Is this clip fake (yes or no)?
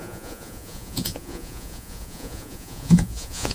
yes